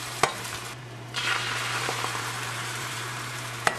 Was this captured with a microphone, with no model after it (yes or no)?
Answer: no